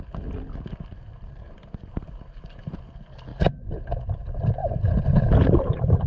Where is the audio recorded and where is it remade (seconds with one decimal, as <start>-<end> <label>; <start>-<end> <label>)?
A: 0.0-1.1 recorded; 1.1-2.8 remade; 2.8-3.3 recorded; 3.3-3.8 remade; 3.8-4.6 recorded; 4.6-6.1 remade